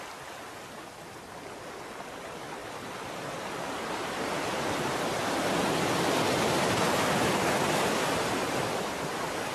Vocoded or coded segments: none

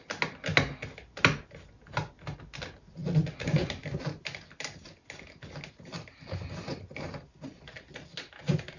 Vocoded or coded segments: none

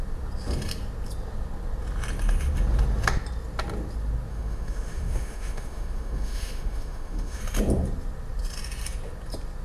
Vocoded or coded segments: 4.3-7.4 (autoencoder, DAC-VAE)